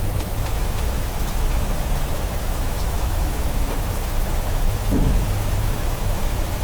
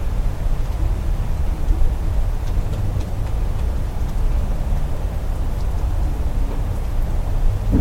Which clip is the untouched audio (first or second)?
second